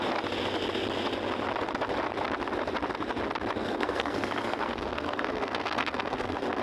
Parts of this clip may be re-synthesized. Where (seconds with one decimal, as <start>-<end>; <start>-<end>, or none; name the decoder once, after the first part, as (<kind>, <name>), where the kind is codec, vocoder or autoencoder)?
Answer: 3.6-6.6 (codec, SNAC)